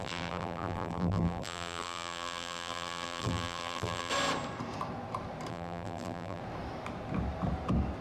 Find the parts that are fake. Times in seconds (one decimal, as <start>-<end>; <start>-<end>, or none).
0.0-4.1; 5.5-6.4